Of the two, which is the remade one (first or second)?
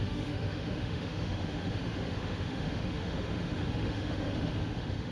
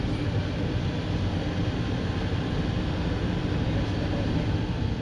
first